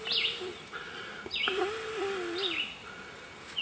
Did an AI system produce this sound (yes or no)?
no